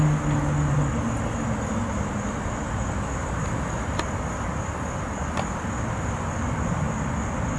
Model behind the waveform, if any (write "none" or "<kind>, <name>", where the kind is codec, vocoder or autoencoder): none